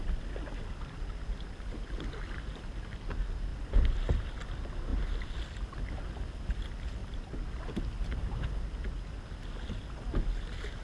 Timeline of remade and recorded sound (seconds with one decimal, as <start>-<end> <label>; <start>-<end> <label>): 0.0-3.5 recorded; 3.5-4.4 remade; 4.4-7.0 recorded; 7.0-7.6 remade; 7.6-10.8 recorded